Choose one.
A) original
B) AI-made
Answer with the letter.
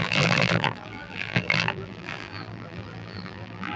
B